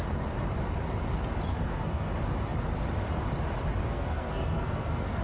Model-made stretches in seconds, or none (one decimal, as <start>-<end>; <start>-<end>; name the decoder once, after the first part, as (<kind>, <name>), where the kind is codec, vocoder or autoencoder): 1.5-2.1 (codec, SNAC); 3.8-5.2